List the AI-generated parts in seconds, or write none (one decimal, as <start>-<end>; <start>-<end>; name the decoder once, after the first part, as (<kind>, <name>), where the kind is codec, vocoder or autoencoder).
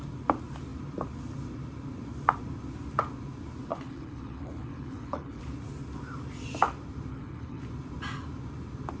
3.7-5.4 (codec, HILCodec); 7.1-7.6